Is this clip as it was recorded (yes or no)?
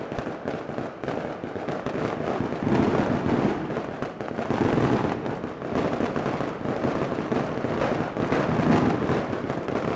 yes